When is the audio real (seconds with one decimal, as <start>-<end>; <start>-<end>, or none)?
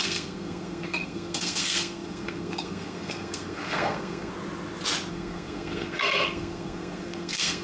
4.3-5.1